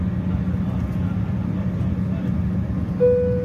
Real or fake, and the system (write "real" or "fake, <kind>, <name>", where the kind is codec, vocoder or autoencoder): real